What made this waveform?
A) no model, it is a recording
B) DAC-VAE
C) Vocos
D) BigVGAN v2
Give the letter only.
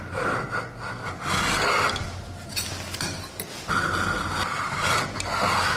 A